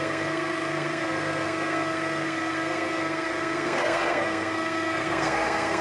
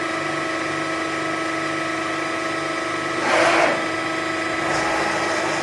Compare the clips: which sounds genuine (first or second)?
second